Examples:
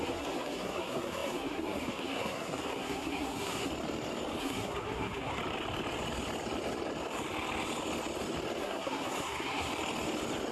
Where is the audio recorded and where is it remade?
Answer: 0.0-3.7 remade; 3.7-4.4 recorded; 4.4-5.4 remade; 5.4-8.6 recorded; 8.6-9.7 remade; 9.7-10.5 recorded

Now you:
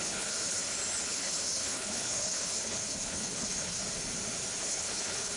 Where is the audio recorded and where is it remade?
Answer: 0.0-0.6 remade; 0.6-1.1 recorded; 1.1-3.8 remade; 3.8-4.6 recorded; 4.6-5.4 remade

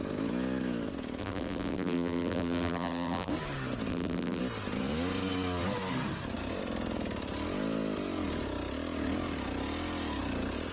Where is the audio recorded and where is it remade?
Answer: 0.0-1.2 recorded; 1.2-3.3 remade; 3.3-3.9 recorded; 3.9-4.4 remade; 4.4-10.7 recorded